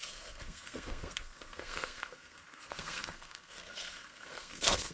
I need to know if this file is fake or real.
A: fake